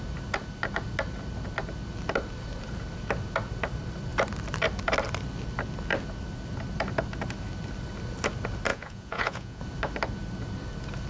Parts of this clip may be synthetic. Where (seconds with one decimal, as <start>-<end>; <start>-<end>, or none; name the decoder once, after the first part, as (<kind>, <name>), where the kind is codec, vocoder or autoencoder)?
8.7-9.6 (vocoder, Vocos)